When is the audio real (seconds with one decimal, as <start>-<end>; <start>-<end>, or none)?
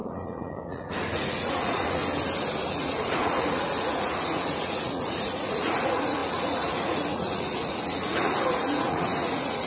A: 2.0-2.7